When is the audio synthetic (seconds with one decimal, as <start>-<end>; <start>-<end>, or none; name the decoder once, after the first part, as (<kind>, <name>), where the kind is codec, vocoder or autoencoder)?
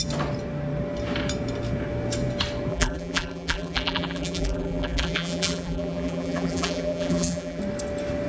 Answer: 2.7-7.6 (vocoder, BigVGAN v2)